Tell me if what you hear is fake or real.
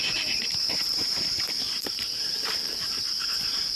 fake